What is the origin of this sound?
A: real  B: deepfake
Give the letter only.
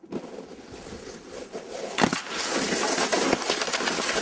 A